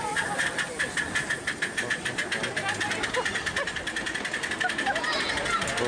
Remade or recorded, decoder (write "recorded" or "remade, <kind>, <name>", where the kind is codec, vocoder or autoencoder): recorded